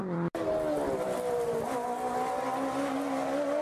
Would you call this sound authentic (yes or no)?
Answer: yes